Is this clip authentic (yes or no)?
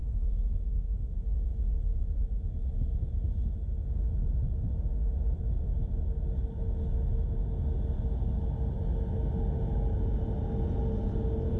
yes